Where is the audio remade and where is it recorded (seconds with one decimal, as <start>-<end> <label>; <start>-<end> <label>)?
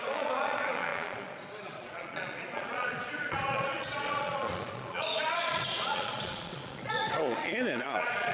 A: 0.0-8.3 remade